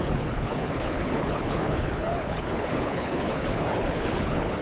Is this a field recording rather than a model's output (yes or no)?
no